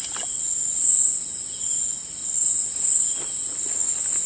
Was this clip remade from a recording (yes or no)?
no